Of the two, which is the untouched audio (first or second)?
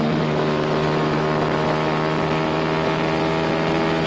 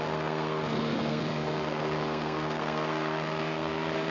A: first